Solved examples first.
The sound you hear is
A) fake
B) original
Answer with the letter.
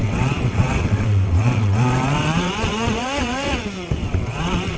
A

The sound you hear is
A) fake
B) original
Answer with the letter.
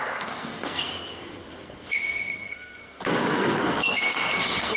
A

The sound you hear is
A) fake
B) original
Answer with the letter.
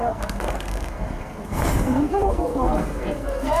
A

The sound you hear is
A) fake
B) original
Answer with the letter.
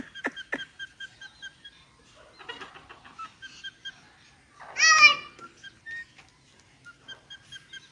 B